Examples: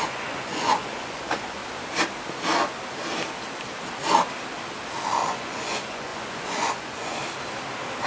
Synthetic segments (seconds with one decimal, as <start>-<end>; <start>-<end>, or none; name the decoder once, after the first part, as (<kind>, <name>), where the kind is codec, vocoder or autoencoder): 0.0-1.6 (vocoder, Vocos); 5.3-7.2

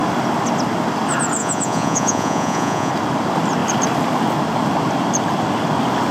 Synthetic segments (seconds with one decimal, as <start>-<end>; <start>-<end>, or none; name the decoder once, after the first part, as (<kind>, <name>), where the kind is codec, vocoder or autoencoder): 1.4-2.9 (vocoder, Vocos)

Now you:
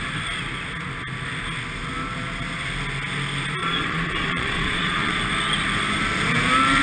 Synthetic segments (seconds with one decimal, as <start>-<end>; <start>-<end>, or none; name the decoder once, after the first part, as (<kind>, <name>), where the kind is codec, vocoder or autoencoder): 3.6-5.2 (vocoder, Vocos)

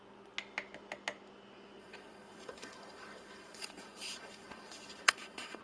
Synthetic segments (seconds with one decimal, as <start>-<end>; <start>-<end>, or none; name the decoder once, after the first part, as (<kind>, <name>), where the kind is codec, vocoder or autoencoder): 1.8-5.6 (vocoder, Vocos)